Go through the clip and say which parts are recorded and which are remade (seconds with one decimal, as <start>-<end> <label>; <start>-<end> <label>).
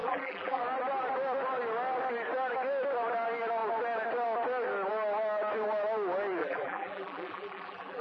0.0-0.6 remade; 0.6-6.4 recorded; 6.4-8.0 remade